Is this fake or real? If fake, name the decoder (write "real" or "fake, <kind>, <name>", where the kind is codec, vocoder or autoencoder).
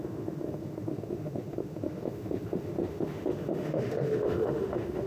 fake, autoencoder, DAC-VAE